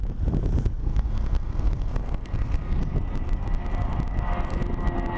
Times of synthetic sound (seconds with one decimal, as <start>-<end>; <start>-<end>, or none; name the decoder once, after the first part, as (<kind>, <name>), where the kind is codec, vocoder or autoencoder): 0.8-2.8 (codec, SNAC)